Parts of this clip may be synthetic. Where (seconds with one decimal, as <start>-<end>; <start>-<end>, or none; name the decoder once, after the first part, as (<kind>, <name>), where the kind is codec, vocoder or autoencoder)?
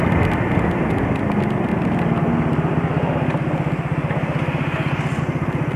none